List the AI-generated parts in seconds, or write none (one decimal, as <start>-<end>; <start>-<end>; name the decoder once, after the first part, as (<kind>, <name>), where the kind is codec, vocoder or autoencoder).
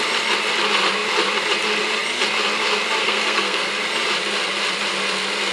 3.0-3.7 (codec, SNAC)